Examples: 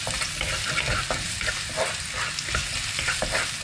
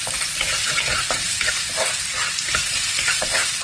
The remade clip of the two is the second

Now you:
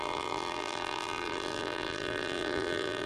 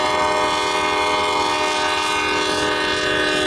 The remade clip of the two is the first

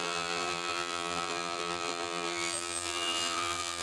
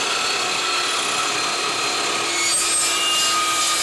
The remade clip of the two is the first